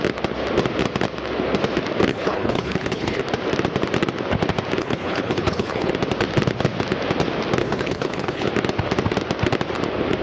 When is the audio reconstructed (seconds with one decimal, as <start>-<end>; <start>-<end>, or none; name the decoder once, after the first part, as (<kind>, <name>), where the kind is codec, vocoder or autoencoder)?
2.1-3.2 (codec, HILCodec); 4.8-5.9; 7.6-8.5